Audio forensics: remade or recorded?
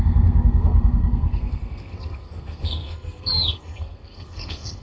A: remade